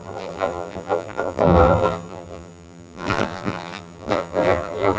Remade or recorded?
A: remade